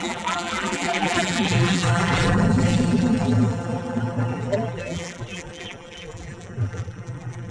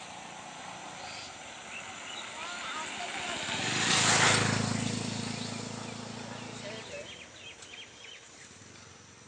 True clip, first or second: second